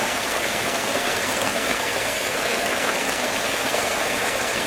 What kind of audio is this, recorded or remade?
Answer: remade